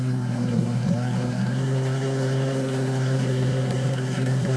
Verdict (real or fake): fake